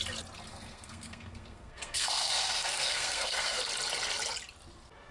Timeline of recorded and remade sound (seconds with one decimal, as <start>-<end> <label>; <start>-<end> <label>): 0.0-0.5 recorded; 0.5-3.6 remade; 3.6-5.1 recorded